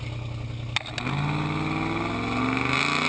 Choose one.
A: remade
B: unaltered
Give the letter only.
B